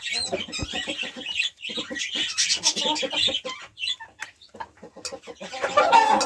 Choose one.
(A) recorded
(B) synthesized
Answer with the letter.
A